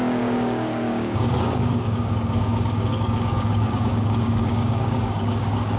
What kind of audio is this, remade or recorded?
remade